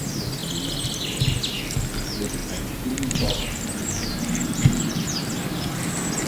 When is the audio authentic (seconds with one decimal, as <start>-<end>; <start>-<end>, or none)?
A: 0.0-2.4